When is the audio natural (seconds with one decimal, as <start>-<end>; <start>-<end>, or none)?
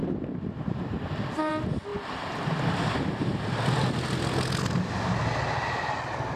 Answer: 0.0-6.4